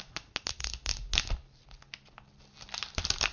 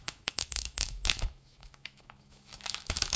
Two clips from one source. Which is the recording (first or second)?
first